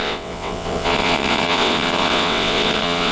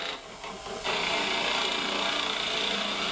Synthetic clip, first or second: first